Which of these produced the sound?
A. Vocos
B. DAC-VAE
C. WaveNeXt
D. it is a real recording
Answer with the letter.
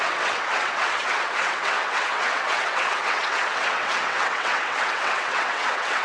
C